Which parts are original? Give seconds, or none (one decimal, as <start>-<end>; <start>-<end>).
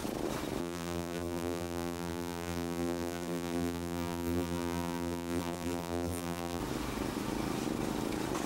0.0-0.6; 6.6-8.5